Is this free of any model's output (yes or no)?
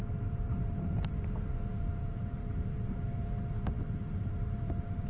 no